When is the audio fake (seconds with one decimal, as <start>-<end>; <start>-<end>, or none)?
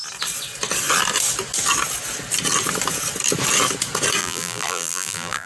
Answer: 4.2-5.5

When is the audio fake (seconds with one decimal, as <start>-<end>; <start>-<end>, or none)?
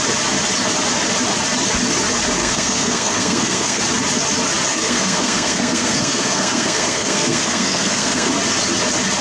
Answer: 2.4-3.8; 4.7-8.3